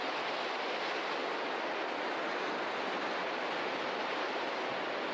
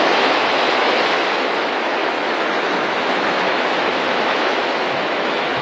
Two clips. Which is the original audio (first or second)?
first